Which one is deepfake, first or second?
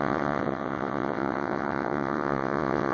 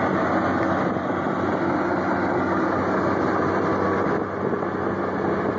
first